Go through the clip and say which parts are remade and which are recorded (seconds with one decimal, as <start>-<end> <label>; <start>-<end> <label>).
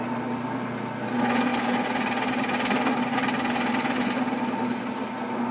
0.0-5.5 recorded